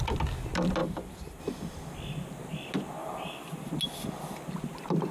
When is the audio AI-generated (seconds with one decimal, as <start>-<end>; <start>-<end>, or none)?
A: 0.8-1.4; 3.0-3.7